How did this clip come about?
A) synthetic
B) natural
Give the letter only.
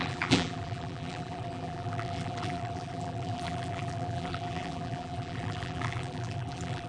A